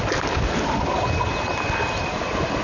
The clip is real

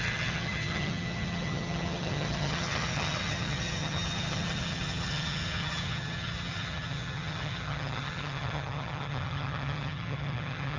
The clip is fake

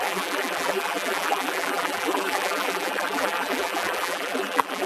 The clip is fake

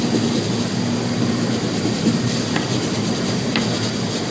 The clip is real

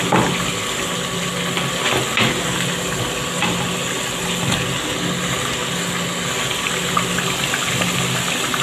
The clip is real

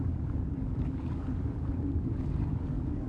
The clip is fake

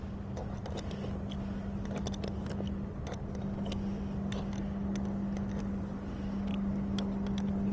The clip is real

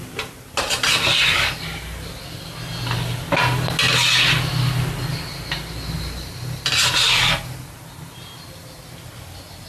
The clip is real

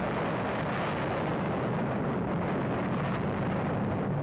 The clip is real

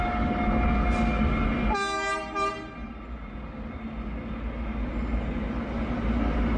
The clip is real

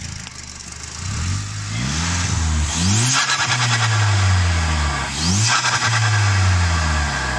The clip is real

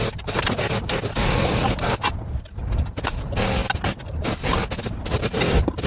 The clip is real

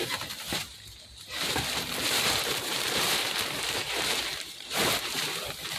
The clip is fake